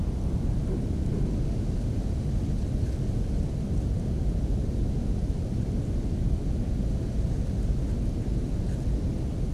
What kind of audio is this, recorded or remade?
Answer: recorded